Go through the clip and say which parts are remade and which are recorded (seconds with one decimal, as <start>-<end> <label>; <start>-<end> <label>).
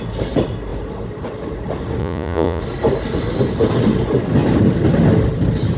0.0-2.0 recorded; 2.0-2.6 remade; 2.6-5.8 recorded